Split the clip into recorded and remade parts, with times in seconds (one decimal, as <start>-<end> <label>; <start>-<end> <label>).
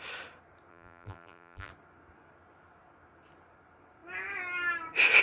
0.0-0.7 recorded; 0.7-1.7 remade; 1.7-5.2 recorded